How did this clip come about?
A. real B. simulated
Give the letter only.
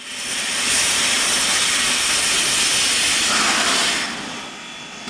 A